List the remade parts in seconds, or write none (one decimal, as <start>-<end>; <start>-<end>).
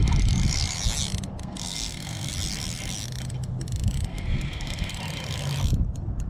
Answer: 1.4-2.3; 4.1-4.9